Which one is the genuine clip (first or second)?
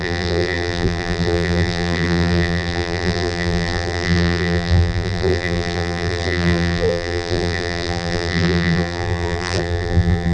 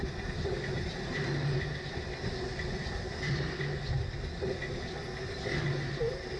second